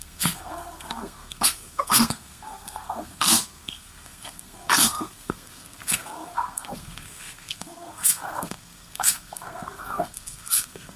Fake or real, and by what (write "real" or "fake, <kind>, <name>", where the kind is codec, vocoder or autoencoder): fake, codec, SNAC